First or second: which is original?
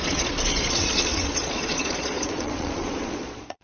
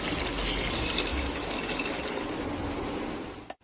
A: second